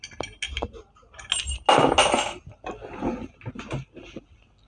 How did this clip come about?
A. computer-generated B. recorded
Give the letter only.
B